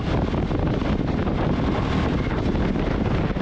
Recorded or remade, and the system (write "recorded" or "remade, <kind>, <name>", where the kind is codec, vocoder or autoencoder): recorded